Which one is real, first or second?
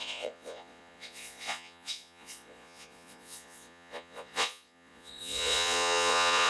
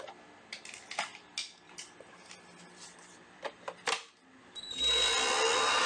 second